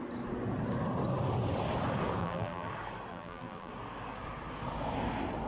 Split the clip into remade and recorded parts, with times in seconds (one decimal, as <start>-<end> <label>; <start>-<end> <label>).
0.0-2.2 recorded; 2.2-2.7 remade; 2.7-3.1 recorded; 3.1-3.7 remade; 3.7-5.5 recorded